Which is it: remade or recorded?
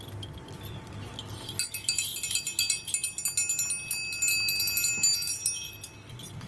recorded